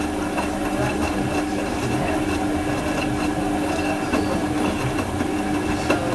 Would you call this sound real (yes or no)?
yes